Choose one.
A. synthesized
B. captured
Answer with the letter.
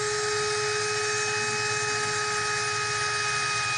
B